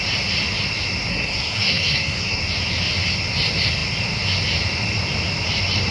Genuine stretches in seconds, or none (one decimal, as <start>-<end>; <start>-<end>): 0.0-1.1; 2.4-5.9